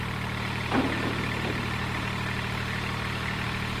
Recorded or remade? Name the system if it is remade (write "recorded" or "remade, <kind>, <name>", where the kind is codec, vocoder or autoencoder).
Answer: recorded